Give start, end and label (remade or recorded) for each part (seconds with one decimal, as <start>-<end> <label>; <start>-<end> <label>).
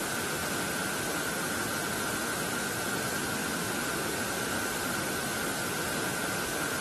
0.0-3.4 recorded; 3.4-4.5 remade; 4.5-6.8 recorded